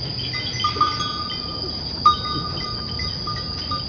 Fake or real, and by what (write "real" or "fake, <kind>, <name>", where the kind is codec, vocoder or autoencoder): real